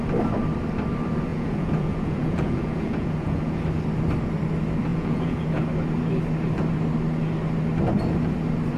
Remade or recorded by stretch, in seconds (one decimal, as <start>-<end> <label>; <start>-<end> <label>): 0.0-1.3 recorded; 1.3-3.6 remade; 3.6-4.9 recorded; 4.9-5.6 remade; 5.6-8.8 recorded